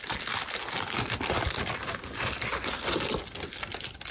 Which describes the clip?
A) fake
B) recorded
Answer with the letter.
B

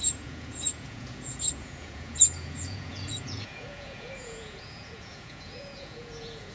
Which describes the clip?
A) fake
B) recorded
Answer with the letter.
A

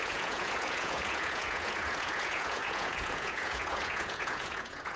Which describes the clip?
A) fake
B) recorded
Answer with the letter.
A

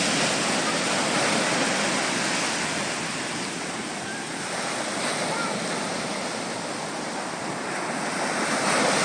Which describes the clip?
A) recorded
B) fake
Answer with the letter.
A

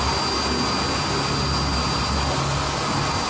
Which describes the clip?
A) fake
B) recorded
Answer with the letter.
B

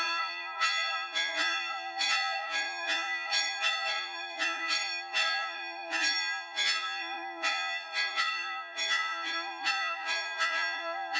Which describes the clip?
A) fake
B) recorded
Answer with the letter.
A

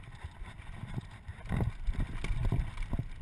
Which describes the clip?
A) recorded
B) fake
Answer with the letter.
A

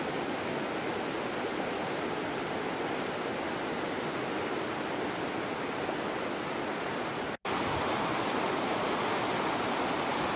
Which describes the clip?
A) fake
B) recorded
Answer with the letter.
B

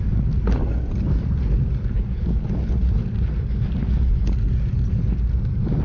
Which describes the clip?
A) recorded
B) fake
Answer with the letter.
A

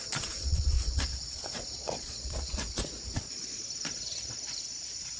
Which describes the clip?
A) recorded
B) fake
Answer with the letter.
B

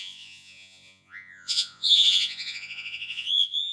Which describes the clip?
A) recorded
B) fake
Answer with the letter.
B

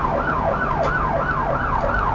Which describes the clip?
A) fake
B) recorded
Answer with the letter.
B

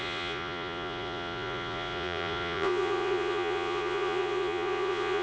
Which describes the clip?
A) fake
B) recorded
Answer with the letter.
A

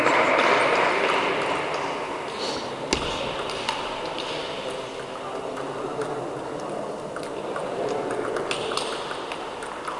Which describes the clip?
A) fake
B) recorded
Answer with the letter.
B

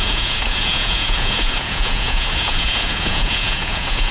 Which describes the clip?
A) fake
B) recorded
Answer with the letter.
A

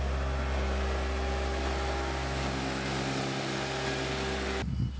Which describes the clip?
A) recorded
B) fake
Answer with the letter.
A